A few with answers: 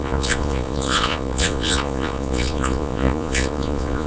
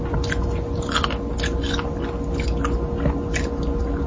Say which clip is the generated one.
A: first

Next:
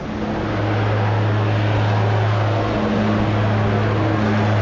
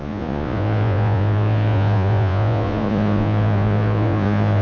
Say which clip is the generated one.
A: second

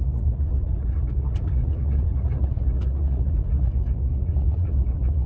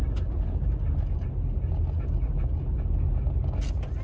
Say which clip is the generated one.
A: first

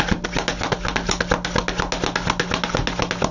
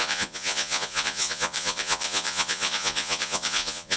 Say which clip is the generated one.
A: second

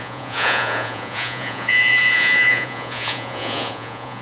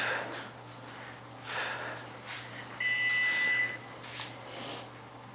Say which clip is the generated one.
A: first